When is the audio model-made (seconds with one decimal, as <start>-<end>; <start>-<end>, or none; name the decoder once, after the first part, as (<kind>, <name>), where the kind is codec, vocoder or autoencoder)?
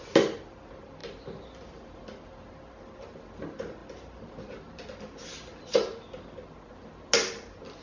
none